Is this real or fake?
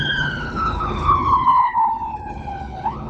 fake